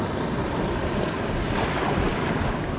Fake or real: real